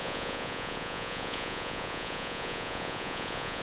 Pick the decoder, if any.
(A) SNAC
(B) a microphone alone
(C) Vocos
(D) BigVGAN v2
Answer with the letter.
C